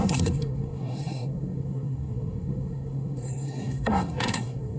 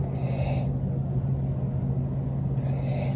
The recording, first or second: second